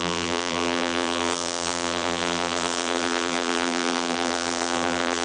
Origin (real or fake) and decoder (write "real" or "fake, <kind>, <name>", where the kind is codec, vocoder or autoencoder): fake, vocoder, BigVGAN v2